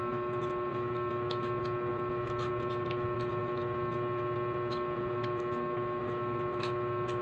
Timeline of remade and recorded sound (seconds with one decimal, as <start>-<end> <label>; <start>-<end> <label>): 0.0-7.2 recorded